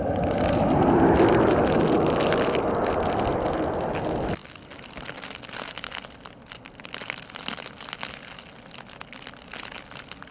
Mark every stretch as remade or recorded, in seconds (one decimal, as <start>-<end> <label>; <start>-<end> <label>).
0.0-10.3 recorded